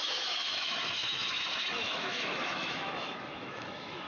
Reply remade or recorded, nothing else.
remade